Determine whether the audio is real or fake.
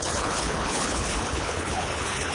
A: fake